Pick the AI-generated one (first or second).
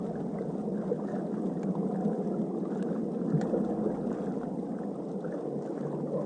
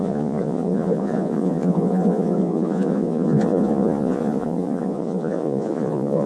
second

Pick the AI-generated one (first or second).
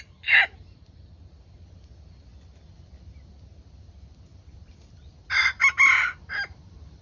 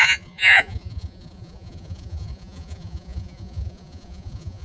second